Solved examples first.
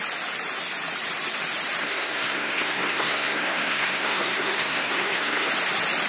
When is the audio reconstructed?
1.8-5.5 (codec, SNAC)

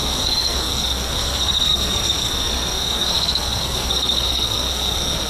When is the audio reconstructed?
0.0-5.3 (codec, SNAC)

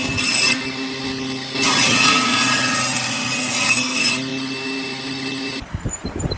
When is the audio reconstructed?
none

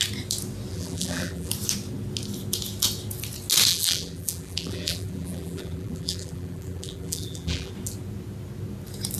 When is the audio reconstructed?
0.7-1.5 (vocoder, BigVGAN v2); 3.7-7.7

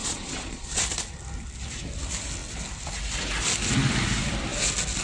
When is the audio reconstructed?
0.0-0.8 (vocoder, Vocos)